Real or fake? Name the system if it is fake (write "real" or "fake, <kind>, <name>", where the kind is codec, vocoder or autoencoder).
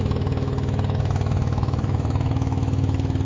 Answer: fake, autoencoder, DAC-VAE